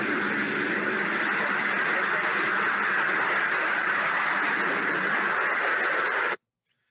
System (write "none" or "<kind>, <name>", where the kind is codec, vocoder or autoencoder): none